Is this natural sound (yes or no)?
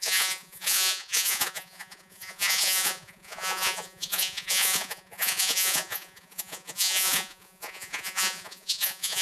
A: no